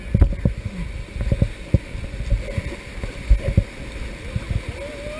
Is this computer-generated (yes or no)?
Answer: no